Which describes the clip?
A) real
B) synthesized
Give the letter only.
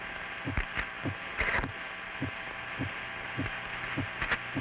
A